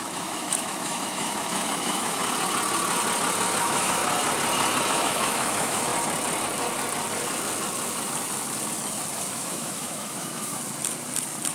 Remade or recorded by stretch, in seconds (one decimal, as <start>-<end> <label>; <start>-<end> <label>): 0.0-2.2 remade; 2.2-3.6 recorded; 3.6-4.0 remade; 4.0-4.9 recorded; 4.9-5.9 remade; 5.9-9.3 recorded; 9.3-10.5 remade; 10.5-11.5 recorded